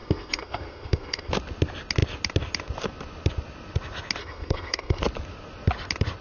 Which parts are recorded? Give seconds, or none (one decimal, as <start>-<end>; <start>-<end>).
1.3-4.2; 5.0-6.2